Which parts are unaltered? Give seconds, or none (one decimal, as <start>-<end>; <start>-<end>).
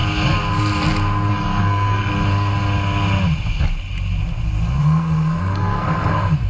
0.0-1.3; 2.1-4.8